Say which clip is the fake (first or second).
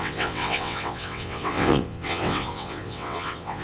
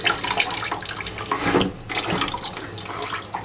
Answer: first